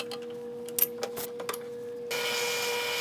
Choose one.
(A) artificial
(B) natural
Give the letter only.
B